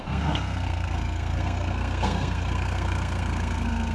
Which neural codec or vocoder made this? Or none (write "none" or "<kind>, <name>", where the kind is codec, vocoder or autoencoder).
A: codec, SNAC